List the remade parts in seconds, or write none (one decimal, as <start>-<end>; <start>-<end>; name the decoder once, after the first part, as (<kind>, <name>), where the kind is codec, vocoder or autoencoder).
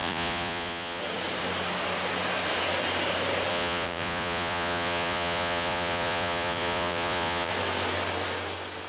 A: 0.0-1.0 (vocoder, Vocos); 3.5-7.5